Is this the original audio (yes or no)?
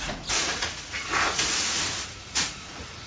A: no